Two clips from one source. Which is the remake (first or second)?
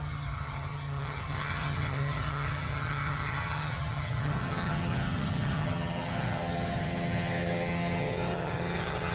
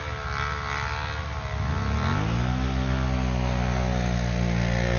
first